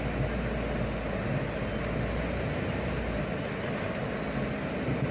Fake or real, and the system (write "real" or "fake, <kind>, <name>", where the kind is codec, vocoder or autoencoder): real